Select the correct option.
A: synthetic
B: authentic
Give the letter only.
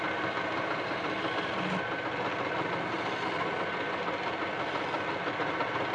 B